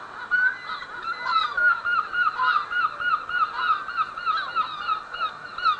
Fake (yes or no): no